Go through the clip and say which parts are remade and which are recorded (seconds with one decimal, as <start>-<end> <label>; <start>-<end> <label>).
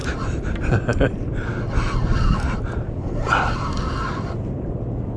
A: 0.0-5.2 recorded